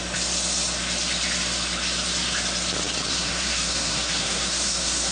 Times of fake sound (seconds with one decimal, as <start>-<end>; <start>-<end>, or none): 3.1-5.1